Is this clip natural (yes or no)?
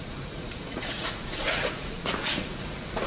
no